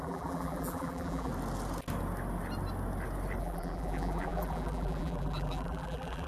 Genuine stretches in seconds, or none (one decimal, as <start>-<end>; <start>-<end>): 1.3-3.4